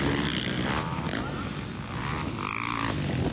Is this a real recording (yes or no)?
yes